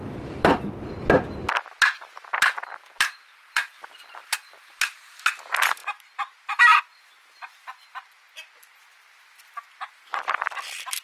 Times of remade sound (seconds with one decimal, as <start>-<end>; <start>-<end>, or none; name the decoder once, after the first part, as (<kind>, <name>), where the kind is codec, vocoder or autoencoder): none